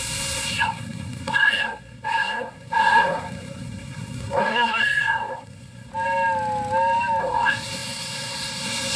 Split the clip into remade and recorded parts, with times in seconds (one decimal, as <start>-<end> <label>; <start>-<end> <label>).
0.0-5.9 remade; 5.9-7.2 recorded; 7.2-9.0 remade